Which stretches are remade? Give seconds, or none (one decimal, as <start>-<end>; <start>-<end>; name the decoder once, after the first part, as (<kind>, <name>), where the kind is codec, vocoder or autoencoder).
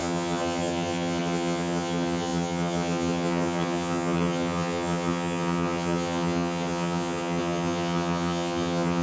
0.0-9.0 (vocoder, HiFi-GAN)